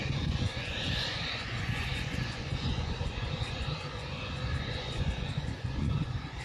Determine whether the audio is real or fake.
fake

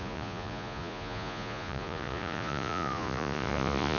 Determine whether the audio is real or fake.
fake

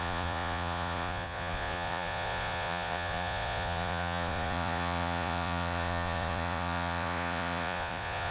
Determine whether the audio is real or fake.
fake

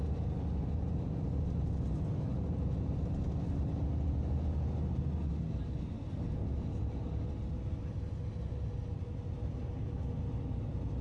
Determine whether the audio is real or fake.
real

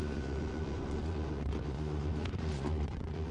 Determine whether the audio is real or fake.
fake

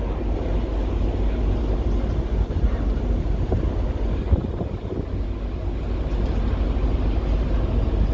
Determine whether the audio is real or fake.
real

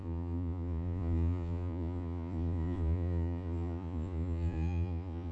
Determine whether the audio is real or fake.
fake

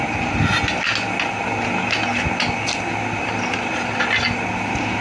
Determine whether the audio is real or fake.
real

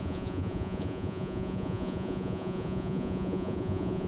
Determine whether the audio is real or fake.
fake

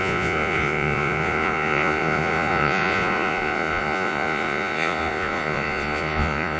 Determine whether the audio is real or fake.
fake